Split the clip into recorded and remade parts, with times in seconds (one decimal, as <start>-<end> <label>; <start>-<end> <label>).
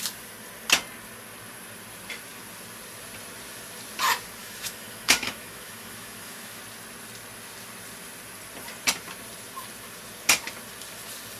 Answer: 0.0-4.4 recorded; 4.4-6.6 remade; 6.6-11.4 recorded